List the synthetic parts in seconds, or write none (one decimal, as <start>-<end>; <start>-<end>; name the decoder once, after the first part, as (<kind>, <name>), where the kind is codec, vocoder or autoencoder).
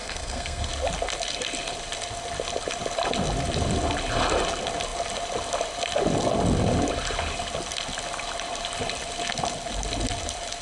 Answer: 0.0-0.7 (codec, SNAC)